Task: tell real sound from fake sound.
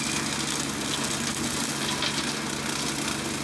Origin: real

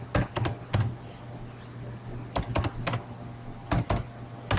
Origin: real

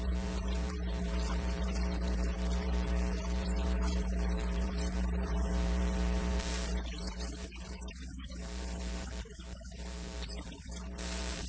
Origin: fake